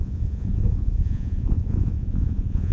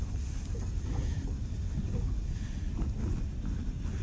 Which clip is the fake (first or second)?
first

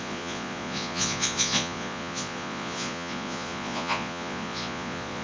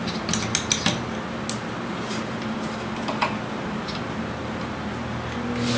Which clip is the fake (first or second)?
first